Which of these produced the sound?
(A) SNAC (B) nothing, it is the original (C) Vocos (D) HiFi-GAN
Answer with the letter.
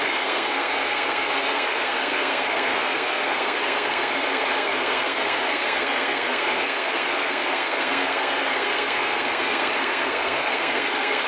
A